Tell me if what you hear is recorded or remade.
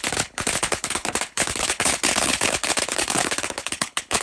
remade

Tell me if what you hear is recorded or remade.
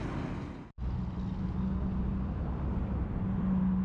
recorded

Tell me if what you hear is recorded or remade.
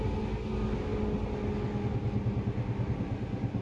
recorded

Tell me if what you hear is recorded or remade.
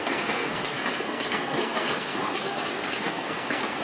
remade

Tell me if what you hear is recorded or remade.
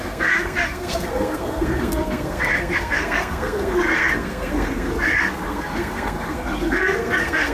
remade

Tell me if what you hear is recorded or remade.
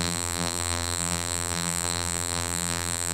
remade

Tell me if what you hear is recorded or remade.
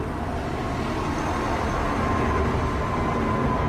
recorded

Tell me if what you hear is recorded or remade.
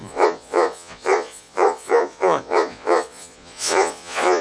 remade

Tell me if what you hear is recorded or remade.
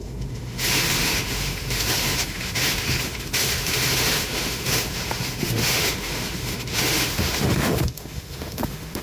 remade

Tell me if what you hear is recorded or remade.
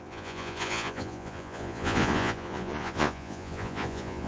remade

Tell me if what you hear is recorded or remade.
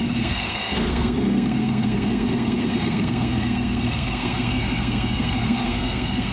remade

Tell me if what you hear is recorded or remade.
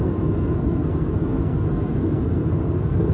remade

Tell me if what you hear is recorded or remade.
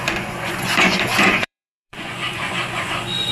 remade